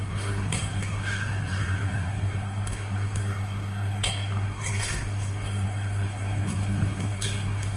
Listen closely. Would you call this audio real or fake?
fake